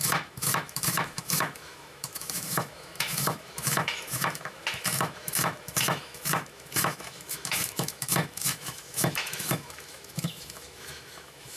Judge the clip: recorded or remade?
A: remade